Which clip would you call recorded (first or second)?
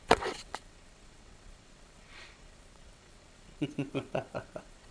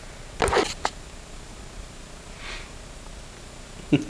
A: second